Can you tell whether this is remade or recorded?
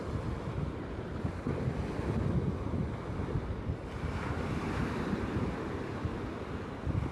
recorded